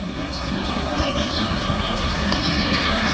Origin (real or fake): fake